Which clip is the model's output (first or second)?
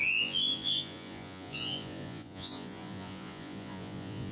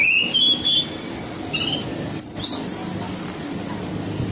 first